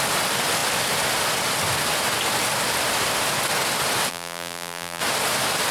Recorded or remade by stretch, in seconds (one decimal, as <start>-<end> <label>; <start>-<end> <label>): 0.0-4.1 recorded; 4.1-5.0 remade; 5.0-5.7 recorded